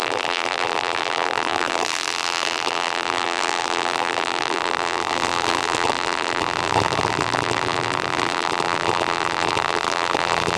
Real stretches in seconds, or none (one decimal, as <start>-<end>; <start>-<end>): none